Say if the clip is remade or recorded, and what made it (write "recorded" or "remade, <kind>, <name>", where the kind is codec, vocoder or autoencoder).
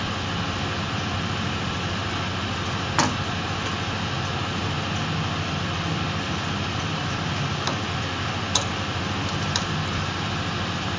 recorded